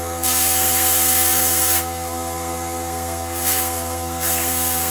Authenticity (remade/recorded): remade